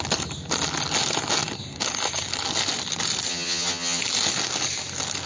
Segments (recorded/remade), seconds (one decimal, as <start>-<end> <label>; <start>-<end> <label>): 0.0-3.3 recorded; 3.3-4.0 remade; 4.0-5.3 recorded